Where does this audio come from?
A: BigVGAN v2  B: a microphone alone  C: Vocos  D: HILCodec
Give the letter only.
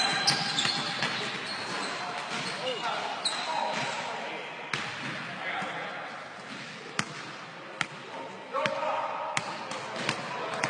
B